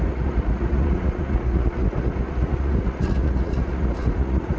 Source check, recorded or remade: remade